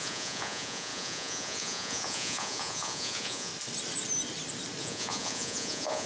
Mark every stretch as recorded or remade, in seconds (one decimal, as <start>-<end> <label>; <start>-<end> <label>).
0.0-3.5 remade; 3.5-4.8 recorded; 4.8-6.1 remade